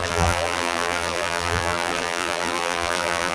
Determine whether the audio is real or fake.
fake